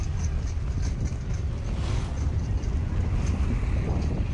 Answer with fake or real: real